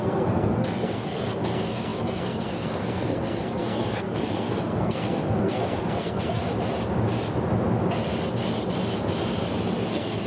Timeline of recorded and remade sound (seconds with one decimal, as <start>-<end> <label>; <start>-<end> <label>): 0.0-6.4 remade; 6.4-9.9 recorded; 9.9-10.3 remade